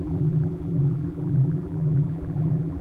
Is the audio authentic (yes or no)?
no